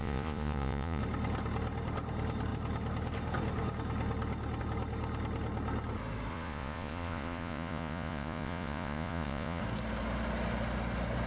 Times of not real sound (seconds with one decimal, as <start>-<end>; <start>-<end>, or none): 0.0-1.0; 6.3-9.6

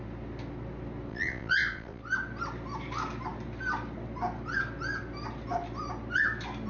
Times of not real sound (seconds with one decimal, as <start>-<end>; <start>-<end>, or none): 1.1-2.0

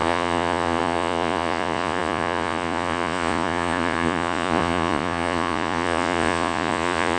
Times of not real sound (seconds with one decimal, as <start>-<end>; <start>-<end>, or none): 0.0-7.2